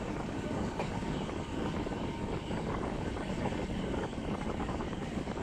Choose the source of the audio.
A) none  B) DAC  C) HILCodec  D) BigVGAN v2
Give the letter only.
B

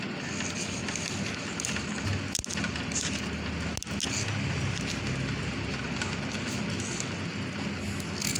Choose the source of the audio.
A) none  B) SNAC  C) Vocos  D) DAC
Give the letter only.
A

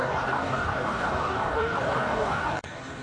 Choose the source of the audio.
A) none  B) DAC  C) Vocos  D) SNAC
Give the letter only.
B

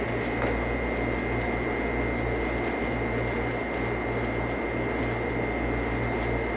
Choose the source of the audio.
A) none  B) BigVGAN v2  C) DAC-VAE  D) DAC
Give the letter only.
A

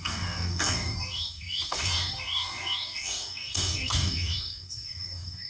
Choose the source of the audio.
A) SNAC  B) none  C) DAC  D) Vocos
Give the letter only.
C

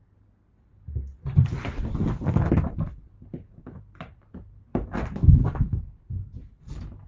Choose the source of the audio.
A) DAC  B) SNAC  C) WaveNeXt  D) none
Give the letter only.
D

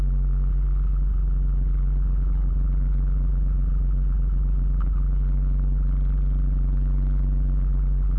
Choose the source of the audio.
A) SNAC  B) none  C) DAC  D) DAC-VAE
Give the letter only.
B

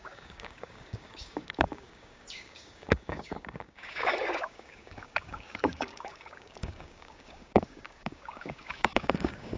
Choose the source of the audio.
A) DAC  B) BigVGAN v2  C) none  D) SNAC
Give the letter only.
A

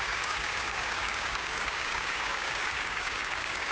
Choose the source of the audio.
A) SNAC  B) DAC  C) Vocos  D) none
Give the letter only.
B